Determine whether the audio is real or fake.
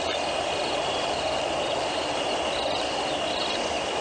real